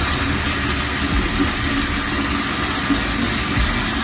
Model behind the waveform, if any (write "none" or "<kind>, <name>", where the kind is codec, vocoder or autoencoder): none